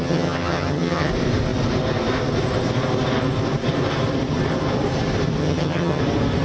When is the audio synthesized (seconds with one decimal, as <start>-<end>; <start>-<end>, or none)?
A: 0.0-1.1; 5.4-6.0